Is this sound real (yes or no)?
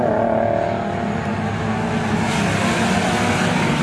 yes